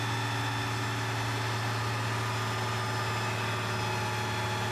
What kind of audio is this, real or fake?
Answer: real